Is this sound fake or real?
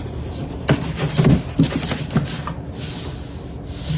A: real